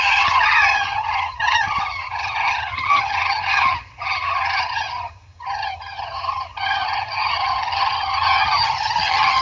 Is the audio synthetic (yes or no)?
yes